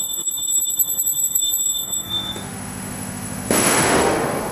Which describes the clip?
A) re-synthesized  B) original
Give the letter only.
A